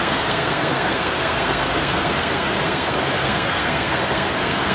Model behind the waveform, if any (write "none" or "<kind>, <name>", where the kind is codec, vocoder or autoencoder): codec, SNAC